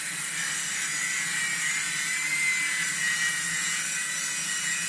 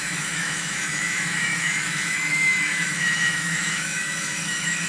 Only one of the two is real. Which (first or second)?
first